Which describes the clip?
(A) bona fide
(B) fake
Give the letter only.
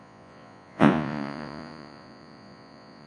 B